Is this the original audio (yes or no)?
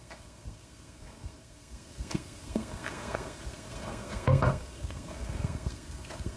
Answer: no